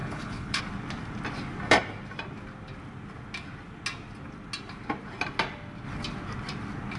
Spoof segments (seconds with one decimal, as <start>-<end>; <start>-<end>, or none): 0.0-0.6